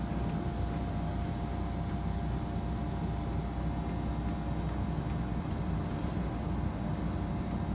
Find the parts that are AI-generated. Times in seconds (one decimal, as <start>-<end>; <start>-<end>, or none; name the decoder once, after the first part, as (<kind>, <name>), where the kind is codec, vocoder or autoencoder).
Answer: 5.3-6.8 (vocoder, BigVGAN v2)